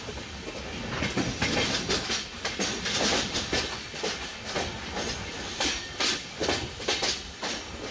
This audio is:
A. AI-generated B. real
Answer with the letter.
B